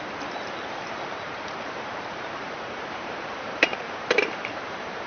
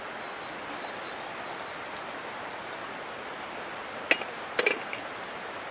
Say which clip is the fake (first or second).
first